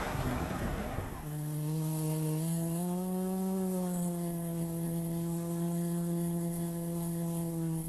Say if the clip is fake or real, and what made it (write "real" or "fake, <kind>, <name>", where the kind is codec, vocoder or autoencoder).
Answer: fake, codec, SNAC